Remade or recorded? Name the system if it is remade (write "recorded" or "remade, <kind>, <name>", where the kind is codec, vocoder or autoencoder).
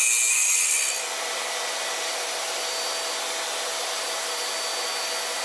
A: recorded